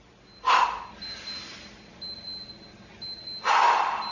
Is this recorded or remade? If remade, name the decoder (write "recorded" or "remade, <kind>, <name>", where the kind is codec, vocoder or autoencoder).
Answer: recorded